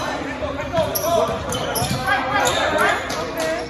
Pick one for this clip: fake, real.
real